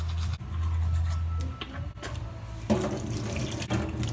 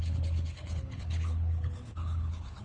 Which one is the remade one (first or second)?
second